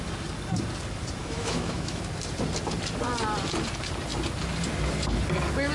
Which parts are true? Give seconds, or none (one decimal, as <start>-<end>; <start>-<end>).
0.0-1.2; 2.0-5.7